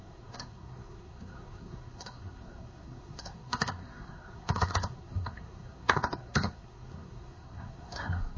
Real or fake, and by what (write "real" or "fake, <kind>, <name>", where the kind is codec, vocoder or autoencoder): fake, codec, SNAC